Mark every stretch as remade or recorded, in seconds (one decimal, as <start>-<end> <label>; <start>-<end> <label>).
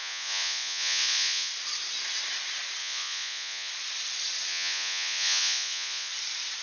0.0-1.5 remade; 1.5-2.8 recorded; 2.8-3.7 remade; 3.7-4.5 recorded; 4.5-6.1 remade; 6.1-6.6 recorded